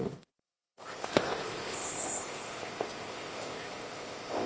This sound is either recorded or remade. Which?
remade